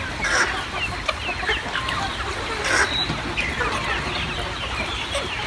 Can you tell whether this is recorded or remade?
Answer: recorded